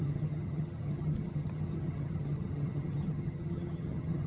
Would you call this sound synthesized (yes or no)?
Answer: yes